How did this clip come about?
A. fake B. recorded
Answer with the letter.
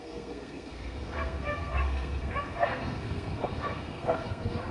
A